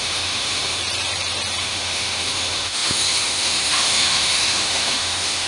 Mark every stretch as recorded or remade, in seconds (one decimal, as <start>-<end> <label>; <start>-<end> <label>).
0.0-0.8 remade; 0.8-1.6 recorded; 1.6-5.5 remade